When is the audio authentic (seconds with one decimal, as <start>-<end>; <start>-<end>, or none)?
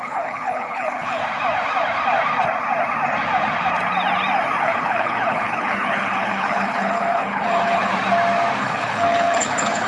1.2-4.6; 7.9-8.6